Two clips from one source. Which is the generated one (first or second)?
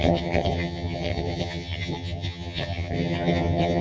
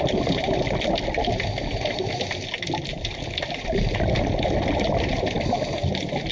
first